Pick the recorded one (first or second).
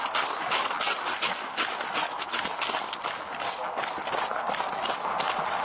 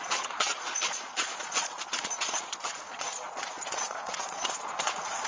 first